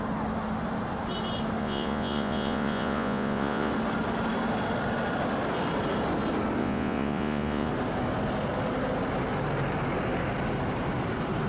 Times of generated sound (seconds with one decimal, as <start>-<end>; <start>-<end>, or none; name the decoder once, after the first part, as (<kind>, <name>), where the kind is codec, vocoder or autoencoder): 1.6-3.7 (vocoder, Vocos); 6.6-7.7